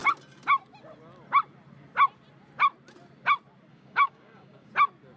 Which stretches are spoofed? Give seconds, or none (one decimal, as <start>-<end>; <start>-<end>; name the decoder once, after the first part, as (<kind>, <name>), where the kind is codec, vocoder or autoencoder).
3.7-4.7 (codec, DAC)